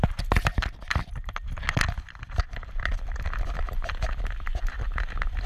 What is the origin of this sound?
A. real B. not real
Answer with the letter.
A